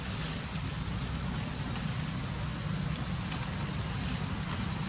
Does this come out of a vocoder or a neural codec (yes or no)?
no